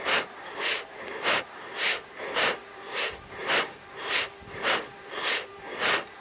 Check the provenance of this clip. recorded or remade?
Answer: remade